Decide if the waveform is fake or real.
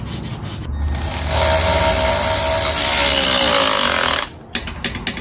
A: real